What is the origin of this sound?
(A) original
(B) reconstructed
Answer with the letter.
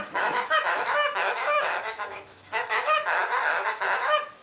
B